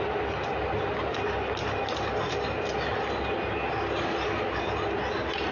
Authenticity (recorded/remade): recorded